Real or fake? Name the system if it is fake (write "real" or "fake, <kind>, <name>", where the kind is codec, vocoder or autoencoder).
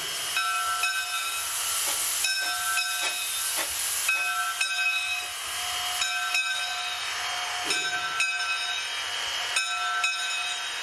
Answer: real